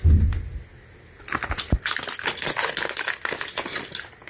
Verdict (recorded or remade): recorded